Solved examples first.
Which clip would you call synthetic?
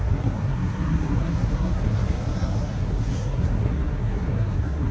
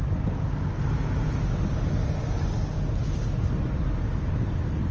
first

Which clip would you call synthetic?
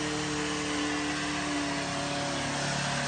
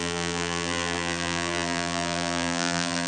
second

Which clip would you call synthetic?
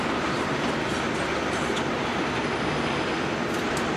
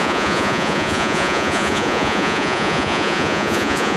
second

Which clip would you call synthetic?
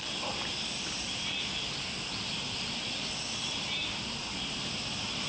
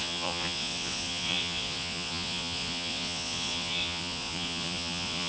second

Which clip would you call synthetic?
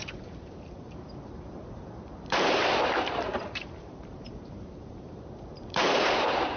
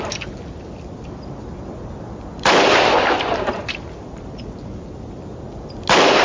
first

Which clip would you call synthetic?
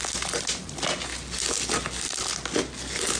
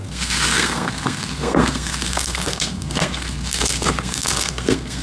second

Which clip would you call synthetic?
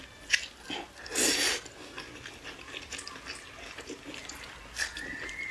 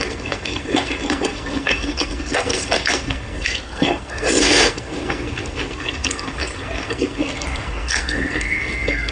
second